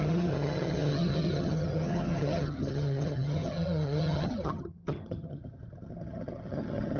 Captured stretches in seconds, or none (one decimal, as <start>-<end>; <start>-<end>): none